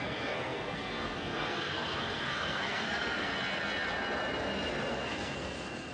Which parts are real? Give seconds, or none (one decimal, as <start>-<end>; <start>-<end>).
3.3-4.9